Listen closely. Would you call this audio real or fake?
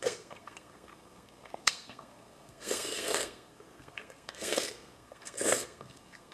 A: fake